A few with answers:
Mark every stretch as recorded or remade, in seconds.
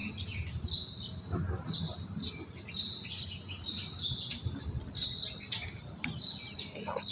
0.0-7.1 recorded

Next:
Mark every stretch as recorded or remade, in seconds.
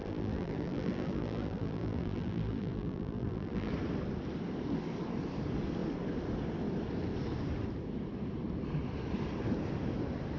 0.0-3.7 remade; 3.7-10.4 recorded